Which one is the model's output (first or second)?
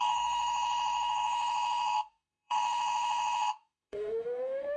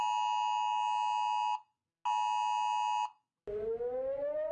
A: first